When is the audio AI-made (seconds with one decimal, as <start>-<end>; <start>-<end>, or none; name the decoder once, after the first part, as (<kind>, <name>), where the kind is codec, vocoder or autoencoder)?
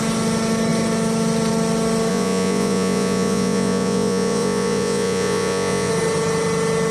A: 2.1-5.9 (vocoder, Vocos)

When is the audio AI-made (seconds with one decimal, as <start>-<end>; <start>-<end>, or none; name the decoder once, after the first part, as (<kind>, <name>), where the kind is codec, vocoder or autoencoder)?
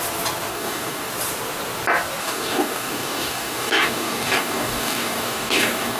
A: 0.5-1.1 (codec, DAC); 2.2-6.0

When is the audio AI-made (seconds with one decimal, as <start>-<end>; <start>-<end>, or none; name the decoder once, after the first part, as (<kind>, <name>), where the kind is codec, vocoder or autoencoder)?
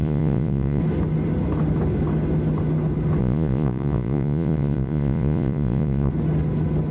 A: 0.0-0.8 (vocoder, Vocos); 3.2-6.1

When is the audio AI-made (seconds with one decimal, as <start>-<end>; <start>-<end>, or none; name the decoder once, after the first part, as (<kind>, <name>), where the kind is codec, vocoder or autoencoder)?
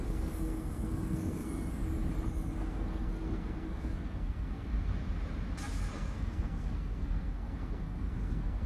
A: 0.0-1.8 (codec, SNAC); 2.3-4.9; 5.8-8.7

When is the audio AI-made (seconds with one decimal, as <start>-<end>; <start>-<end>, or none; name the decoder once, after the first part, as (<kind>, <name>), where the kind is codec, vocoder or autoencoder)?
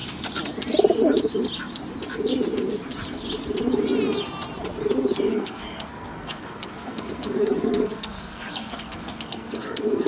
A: 5.3-10.1 (codec, SNAC)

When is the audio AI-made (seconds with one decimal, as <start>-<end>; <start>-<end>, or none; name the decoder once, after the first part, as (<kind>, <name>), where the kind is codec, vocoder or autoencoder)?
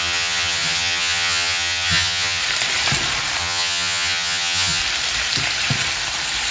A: 0.0-2.4 (vocoder, HiFi-GAN); 3.4-4.8